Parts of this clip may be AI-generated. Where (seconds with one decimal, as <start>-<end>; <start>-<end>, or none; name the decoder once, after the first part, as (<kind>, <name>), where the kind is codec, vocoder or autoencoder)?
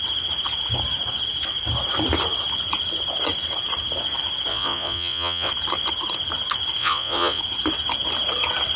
4.5-5.5 (vocoder, Vocos); 6.8-7.4